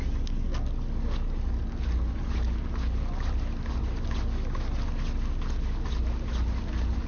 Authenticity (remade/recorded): recorded